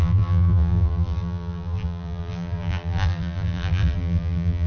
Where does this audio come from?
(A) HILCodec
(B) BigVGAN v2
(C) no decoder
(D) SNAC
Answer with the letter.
B